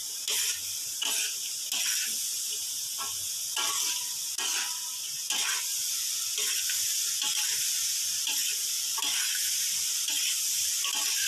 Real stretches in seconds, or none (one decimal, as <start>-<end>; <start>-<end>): 0.0-8.4; 9.0-11.3